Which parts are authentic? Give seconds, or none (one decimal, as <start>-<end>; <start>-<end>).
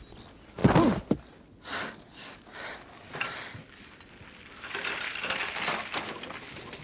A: 0.0-6.8